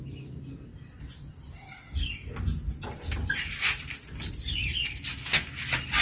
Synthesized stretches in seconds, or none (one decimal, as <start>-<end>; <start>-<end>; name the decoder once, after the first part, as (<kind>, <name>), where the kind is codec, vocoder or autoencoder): 5.1-5.6 (autoencoder, DAC-VAE)